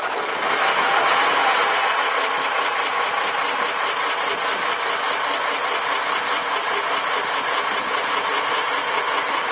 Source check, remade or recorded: recorded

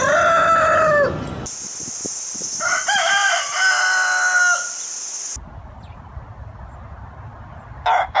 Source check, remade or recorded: recorded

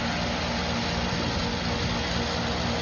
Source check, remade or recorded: recorded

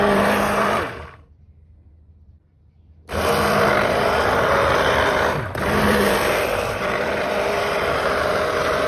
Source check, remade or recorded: remade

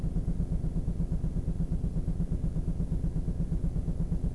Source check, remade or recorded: recorded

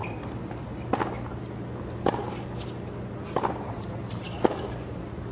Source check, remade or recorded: recorded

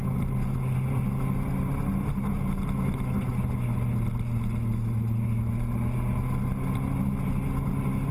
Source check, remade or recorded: recorded